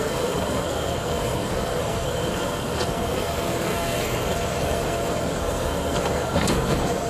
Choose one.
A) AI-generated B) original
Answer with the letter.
A